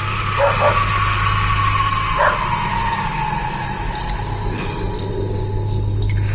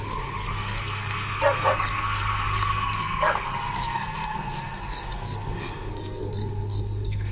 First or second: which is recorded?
first